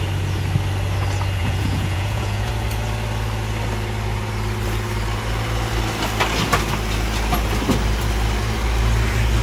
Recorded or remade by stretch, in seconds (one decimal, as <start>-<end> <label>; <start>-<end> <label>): 0.0-1.4 recorded; 1.4-2.5 remade; 2.5-9.4 recorded